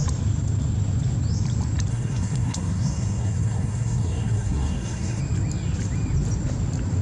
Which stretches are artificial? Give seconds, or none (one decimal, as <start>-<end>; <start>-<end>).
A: 1.9-5.2